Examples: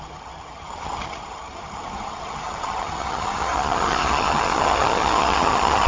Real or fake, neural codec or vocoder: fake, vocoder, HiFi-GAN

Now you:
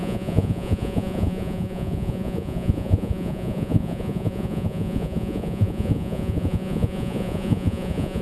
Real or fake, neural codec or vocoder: fake, vocoder, Vocos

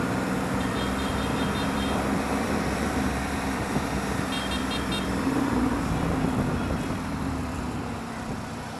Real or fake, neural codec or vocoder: fake, vocoder, BigVGAN v2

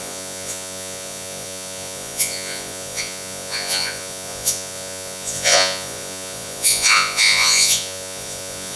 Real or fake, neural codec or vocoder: fake, vocoder, Vocos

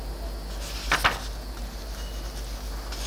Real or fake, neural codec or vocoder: real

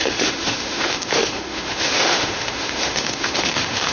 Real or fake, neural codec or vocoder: fake, autoencoder, DAC-VAE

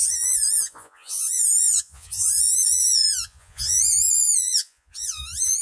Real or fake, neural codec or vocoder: fake, vocoder, Vocos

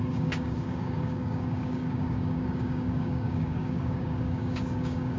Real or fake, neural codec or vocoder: fake, codec, DAC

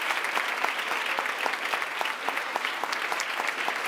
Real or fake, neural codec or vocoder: real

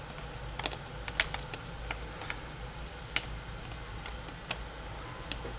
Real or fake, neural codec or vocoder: real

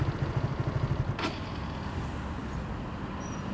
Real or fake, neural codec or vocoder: real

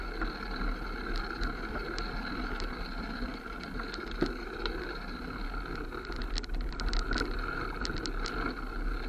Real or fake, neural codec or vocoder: real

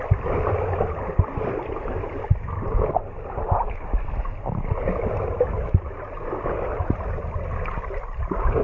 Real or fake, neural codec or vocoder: real